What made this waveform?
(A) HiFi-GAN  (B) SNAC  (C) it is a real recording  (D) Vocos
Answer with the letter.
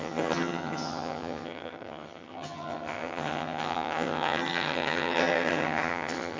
A